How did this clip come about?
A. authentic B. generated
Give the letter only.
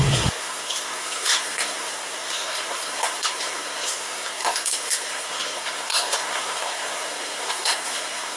B